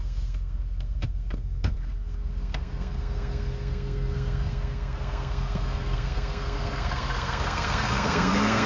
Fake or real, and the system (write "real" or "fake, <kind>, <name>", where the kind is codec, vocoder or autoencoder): fake, codec, SNAC